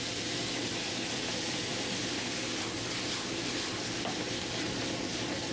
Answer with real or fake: real